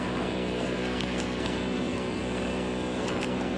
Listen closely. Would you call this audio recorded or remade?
remade